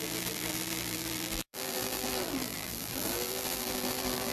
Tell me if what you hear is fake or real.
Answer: fake